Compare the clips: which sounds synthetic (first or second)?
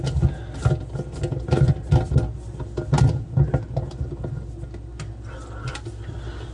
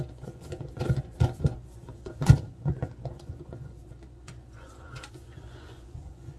second